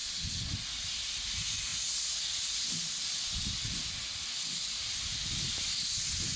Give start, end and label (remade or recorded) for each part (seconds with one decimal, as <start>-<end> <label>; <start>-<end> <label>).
0.0-0.6 remade; 0.6-1.7 recorded; 1.7-5.5 remade; 5.5-6.4 recorded